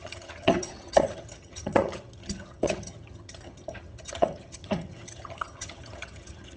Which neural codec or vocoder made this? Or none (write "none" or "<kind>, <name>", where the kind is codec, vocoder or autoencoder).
vocoder, HiFi-GAN